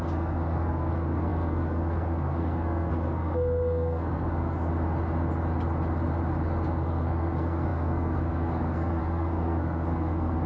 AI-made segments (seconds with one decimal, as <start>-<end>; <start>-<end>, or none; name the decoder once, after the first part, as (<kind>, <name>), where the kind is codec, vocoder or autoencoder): 0.0-4.7 (codec, SNAC); 6.7-10.5